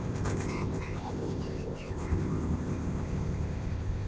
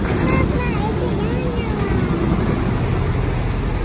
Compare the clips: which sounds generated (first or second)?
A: first